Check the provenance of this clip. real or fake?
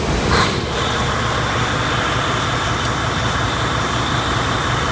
real